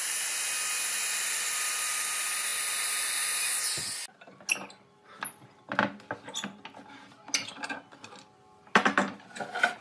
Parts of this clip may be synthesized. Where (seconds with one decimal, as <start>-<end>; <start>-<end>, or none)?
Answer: none